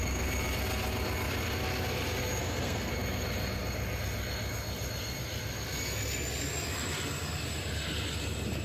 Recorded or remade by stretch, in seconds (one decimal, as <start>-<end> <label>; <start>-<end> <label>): 0.0-2.4 recorded; 2.4-2.9 remade; 2.9-8.6 recorded